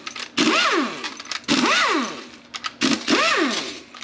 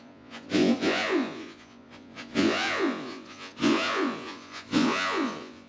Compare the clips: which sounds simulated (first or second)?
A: second